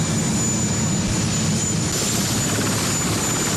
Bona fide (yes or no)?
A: yes